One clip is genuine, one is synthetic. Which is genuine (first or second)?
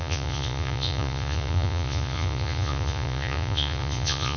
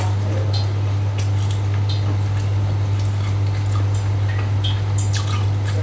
second